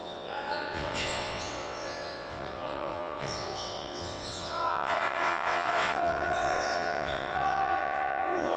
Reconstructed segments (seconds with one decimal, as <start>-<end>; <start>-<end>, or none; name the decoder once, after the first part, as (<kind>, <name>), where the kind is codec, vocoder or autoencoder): 0.0-8.6 (vocoder, WaveNeXt)